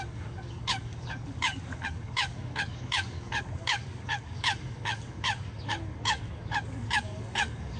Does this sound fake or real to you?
fake